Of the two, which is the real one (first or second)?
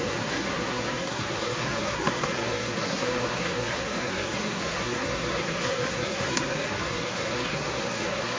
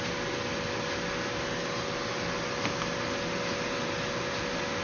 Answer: second